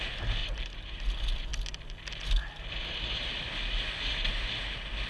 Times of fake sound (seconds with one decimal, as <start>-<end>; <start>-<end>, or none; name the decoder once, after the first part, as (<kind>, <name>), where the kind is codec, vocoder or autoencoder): 0.4-1.1 (vocoder, BigVGAN v2)